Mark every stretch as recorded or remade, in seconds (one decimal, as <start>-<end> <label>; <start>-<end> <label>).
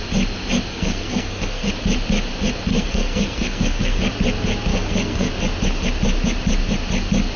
0.0-0.7 recorded; 0.7-1.7 remade; 1.7-2.7 recorded; 2.7-4.0 remade; 4.0-4.7 recorded; 4.7-5.3 remade; 5.3-7.4 recorded